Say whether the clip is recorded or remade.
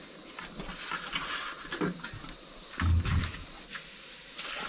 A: recorded